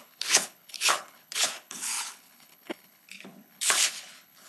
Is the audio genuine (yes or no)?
no